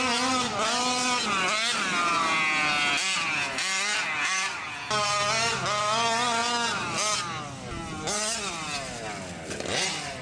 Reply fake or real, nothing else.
real